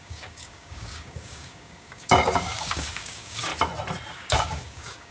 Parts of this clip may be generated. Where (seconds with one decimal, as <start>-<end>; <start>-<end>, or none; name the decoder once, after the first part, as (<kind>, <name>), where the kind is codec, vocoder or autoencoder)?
0.0-3.5 (codec, DAC); 4.1-5.1